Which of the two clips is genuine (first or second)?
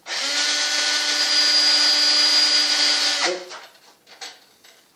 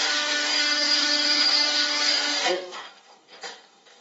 first